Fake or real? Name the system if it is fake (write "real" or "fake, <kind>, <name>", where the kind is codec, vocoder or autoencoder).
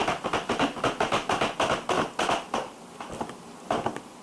real